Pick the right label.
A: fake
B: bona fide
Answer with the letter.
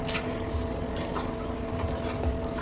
B